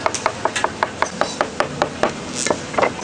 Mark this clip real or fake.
real